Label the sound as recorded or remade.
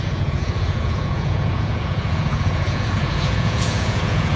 remade